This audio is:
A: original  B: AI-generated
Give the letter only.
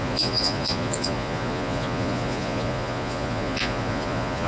B